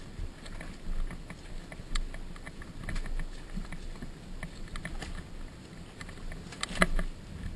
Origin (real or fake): real